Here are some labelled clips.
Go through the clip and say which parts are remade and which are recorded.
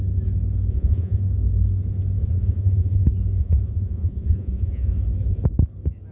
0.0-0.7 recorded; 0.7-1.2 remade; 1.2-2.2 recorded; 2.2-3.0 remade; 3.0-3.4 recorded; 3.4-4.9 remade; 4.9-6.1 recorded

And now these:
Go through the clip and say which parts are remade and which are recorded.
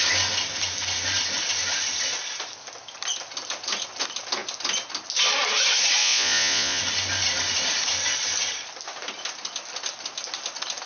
0.0-6.0 recorded; 6.0-6.8 remade; 6.8-10.9 recorded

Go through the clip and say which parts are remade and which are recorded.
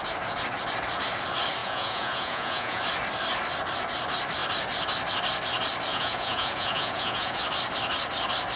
0.0-1.6 recorded; 1.6-2.8 remade; 2.8-5.9 recorded; 5.9-7.4 remade; 7.4-8.6 recorded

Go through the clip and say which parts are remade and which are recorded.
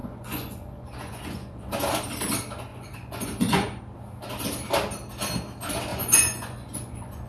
0.0-1.7 remade; 1.7-2.7 recorded; 2.7-3.8 remade; 3.8-5.9 recorded; 5.9-7.3 remade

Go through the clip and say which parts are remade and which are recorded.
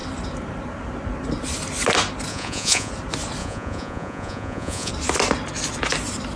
0.0-2.3 recorded; 2.3-2.9 remade; 2.9-3.4 recorded; 3.4-4.9 remade; 4.9-6.4 recorded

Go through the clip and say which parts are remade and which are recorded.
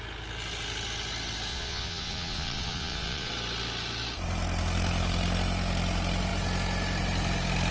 0.0-1.5 recorded; 1.5-3.3 remade; 3.3-7.7 recorded